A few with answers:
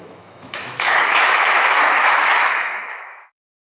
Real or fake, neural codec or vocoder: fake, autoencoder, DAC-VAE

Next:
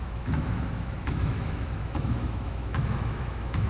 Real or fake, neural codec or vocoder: fake, autoencoder, DAC-VAE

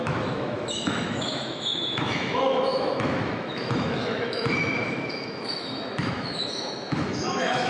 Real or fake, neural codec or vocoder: fake, autoencoder, DAC-VAE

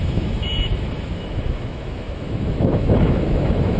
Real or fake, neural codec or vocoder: fake, autoencoder, DAC-VAE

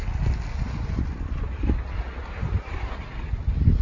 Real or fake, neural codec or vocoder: real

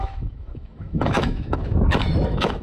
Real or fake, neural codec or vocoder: fake, autoencoder, DAC-VAE